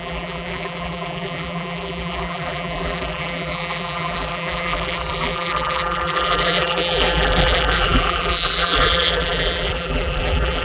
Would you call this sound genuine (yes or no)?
no